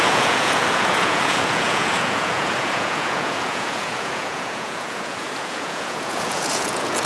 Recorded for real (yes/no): no